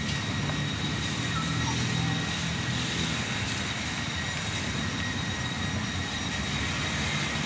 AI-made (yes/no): no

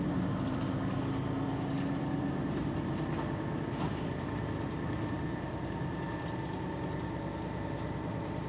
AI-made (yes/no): no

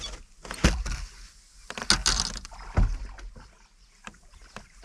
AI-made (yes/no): no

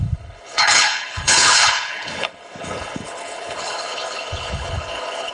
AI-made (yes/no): yes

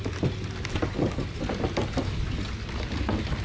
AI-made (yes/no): no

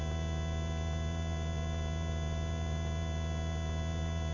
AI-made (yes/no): no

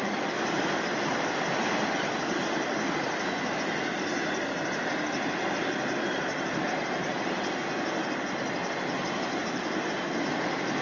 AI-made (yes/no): no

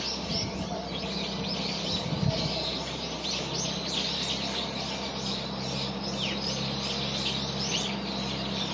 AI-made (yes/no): no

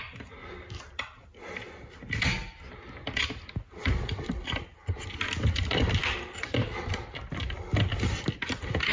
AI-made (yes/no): no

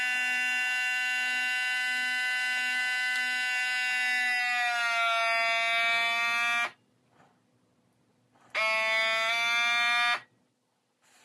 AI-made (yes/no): no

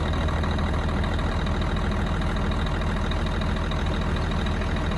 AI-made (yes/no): no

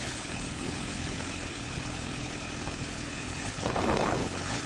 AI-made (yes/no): yes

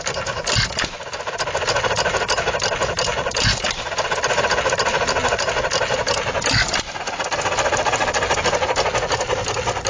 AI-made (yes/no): no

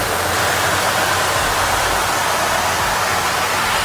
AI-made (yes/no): no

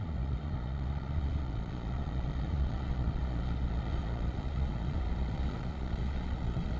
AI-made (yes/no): yes